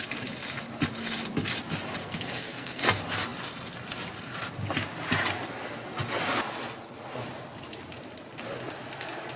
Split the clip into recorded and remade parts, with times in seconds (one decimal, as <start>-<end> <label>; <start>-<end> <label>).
0.0-2.0 recorded; 2.0-2.8 remade; 2.8-9.4 recorded